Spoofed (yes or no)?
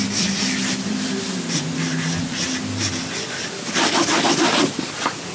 no